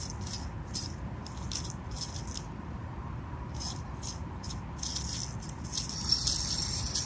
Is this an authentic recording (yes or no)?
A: yes